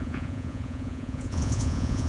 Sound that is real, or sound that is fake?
fake